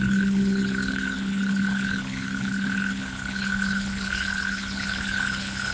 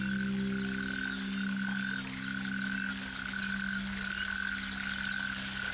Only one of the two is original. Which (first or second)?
second